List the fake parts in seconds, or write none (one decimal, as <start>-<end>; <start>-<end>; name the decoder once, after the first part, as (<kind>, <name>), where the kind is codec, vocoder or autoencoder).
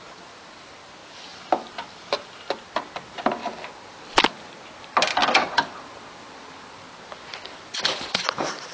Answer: none